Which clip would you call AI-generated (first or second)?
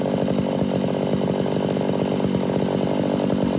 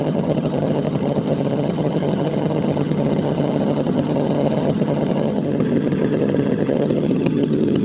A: second